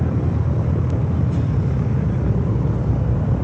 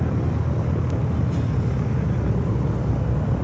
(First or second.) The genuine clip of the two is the second